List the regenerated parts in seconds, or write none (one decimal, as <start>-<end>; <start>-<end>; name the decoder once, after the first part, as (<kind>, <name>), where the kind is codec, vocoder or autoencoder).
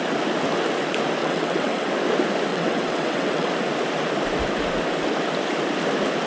1.2-1.9 (vocoder, WaveNeXt); 2.5-3.5